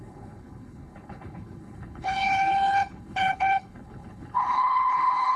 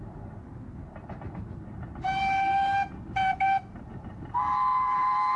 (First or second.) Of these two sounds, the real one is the second